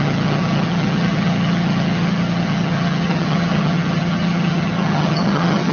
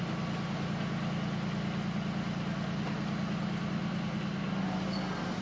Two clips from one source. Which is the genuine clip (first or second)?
second